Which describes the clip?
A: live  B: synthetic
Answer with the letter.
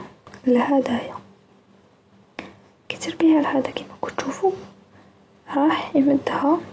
A